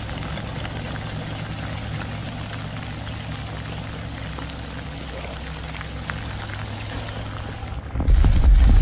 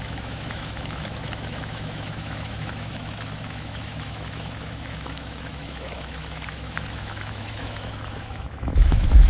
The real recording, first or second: first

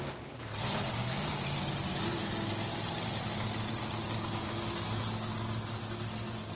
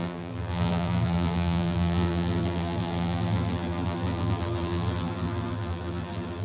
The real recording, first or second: first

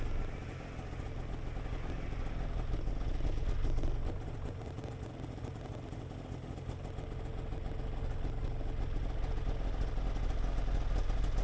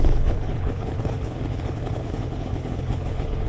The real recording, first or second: first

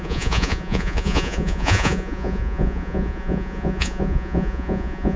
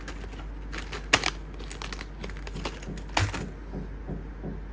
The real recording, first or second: second